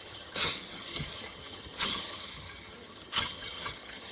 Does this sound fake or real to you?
fake